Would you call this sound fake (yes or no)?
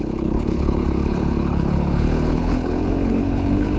yes